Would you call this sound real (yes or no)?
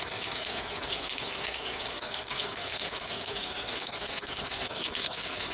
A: no